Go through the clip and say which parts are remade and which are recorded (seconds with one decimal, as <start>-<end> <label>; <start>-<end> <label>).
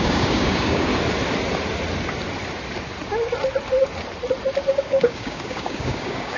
0.0-0.9 remade; 0.9-4.7 recorded; 4.7-6.4 remade